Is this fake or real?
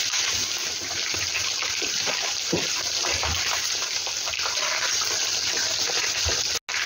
real